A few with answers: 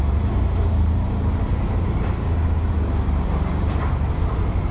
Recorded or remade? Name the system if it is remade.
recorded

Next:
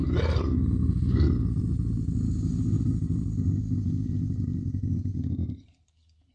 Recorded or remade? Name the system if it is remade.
recorded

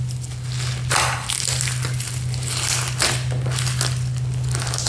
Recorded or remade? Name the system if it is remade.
recorded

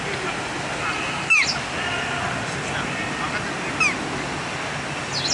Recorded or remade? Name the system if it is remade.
recorded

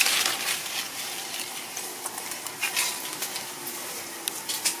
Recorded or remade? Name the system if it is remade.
recorded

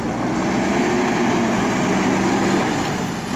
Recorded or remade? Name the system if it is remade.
recorded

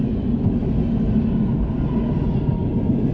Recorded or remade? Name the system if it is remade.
recorded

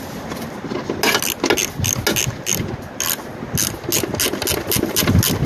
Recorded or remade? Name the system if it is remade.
recorded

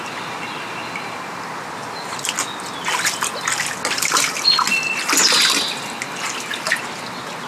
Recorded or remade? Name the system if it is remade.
recorded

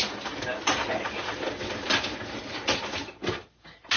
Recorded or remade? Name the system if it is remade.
recorded